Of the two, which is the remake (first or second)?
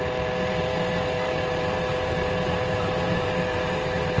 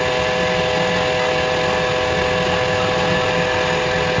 first